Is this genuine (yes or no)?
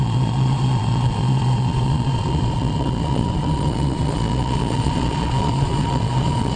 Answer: no